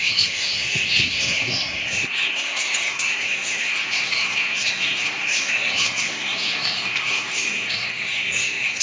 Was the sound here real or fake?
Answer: fake